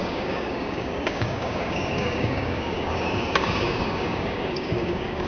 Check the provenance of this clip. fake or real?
fake